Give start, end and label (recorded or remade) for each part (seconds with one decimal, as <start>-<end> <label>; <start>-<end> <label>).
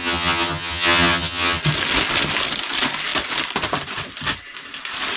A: 0.0-1.6 remade; 1.6-5.2 recorded